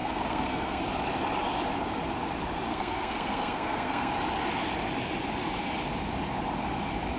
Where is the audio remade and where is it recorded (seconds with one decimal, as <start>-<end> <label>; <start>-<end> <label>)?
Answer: 0.0-0.8 remade; 0.8-2.7 recorded; 2.7-4.1 remade; 4.1-7.2 recorded